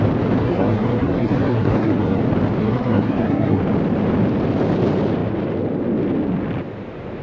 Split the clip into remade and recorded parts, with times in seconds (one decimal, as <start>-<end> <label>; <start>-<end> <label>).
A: 0.0-0.4 recorded; 0.4-2.2 remade; 2.2-2.6 recorded; 2.6-3.6 remade; 3.6-7.2 recorded